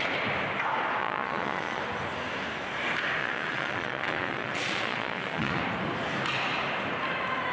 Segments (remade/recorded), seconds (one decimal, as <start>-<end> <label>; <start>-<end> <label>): 0.0-1.0 recorded; 1.0-1.8 remade; 1.8-3.2 recorded; 3.2-5.6 remade; 5.6-7.5 recorded

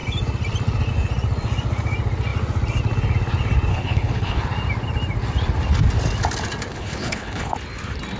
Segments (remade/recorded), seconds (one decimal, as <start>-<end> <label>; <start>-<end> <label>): 0.0-3.7 recorded; 3.7-4.4 remade; 4.4-6.7 recorded; 6.7-7.5 remade; 7.5-8.2 recorded

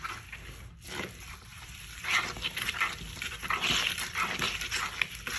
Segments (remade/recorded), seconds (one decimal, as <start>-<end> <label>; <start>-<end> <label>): 0.0-1.5 recorded; 1.5-4.7 remade; 4.7-5.4 recorded

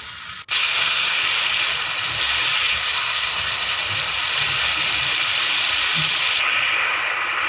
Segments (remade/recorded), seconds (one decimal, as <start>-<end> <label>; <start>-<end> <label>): 0.0-0.6 recorded; 0.6-1.2 remade; 1.2-2.7 recorded; 2.7-3.8 remade; 3.8-7.5 recorded